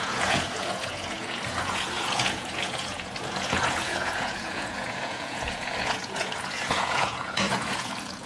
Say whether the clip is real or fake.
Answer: fake